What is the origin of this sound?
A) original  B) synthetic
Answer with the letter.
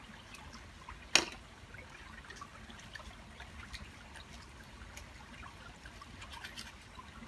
A